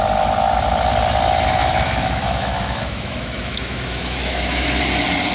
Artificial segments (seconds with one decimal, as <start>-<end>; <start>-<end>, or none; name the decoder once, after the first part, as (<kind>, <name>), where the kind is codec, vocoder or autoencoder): 1.6-4.8 (autoencoder, DAC-VAE)